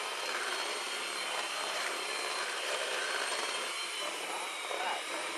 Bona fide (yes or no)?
no